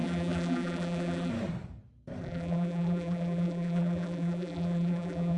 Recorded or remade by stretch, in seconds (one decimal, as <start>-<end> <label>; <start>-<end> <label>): 0.0-1.3 remade; 1.3-2.2 recorded; 2.2-5.4 remade